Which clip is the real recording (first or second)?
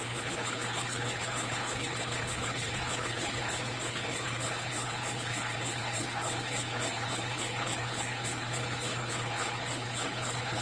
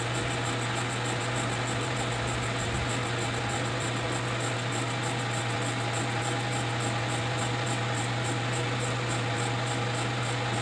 second